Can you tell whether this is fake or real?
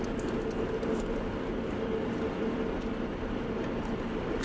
real